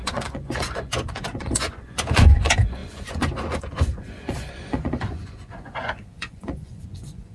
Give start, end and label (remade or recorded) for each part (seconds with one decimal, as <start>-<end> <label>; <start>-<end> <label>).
0.0-7.3 remade